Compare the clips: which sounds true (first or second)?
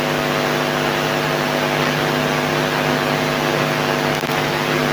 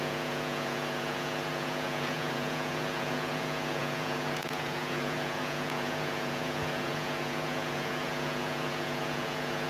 first